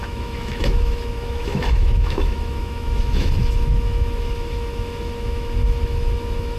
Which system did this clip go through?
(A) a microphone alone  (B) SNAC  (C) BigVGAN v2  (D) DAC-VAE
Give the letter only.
D